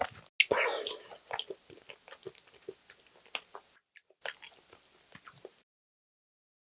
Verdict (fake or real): real